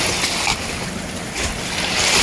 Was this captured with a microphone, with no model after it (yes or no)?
yes